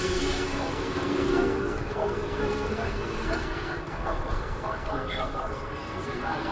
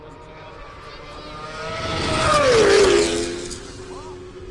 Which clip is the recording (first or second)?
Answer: second